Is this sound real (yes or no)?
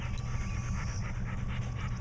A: yes